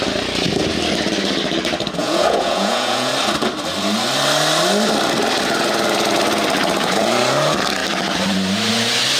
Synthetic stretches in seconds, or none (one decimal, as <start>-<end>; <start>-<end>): 2.0-3.1